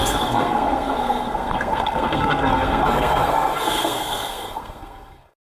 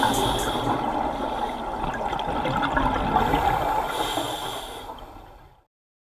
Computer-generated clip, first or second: first